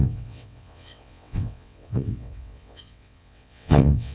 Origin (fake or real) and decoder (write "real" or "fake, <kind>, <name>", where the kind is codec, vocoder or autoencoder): fake, vocoder, WaveNeXt